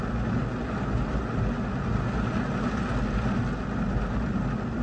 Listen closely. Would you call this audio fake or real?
real